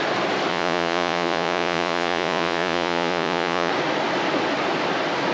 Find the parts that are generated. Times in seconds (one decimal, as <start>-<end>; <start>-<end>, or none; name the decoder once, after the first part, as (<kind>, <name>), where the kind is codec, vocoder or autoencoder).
0.5-3.7 (vocoder, Vocos)

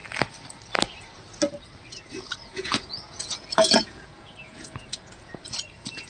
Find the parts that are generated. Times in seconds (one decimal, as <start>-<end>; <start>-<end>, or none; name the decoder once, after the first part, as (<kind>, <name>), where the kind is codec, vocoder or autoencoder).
2.4-5.4 (vocoder, Vocos)

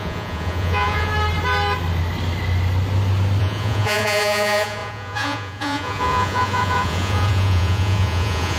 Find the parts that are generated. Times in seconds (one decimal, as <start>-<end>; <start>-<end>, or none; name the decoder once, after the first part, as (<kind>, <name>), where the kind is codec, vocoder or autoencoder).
0.0-1.1 (vocoder, Vocos); 3.4-8.6

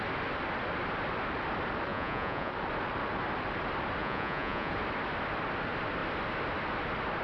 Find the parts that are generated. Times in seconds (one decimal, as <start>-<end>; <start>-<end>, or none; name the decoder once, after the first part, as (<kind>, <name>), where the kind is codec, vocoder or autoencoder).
1.9-2.5 (vocoder, Vocos); 4.0-4.7

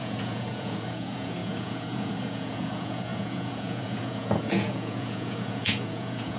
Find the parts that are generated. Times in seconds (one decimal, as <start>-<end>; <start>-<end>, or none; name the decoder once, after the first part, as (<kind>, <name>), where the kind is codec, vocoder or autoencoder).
0.0-6.4 (vocoder, Vocos)

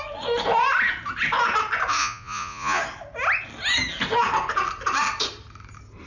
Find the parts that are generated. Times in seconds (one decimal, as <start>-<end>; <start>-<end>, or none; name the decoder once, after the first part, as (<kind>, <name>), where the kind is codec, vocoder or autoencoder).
2.0-2.8 (vocoder, Vocos)